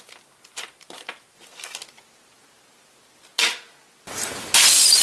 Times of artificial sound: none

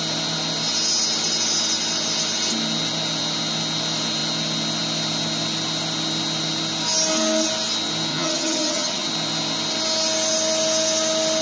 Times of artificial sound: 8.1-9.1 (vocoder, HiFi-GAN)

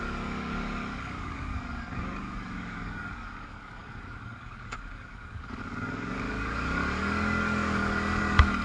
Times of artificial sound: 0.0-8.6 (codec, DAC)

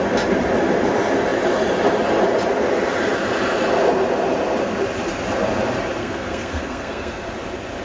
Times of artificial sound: 6.0-7.3 (codec, SNAC)

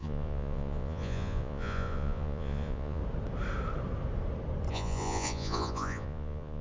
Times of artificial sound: 0.0-3.0 (vocoder, Vocos); 4.7-6.6

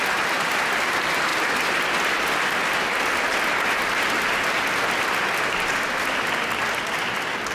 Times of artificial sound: none

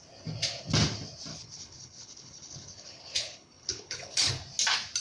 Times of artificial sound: 1.3-4.3 (codec, HILCodec)